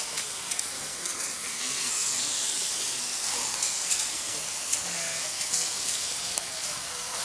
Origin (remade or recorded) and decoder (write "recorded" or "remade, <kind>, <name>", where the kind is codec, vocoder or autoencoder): remade, codec, SNAC